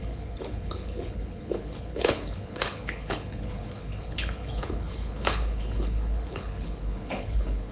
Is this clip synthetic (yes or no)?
yes